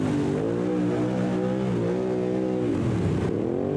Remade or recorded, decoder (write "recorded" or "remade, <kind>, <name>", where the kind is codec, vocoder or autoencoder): recorded